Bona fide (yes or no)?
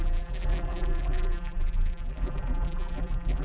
no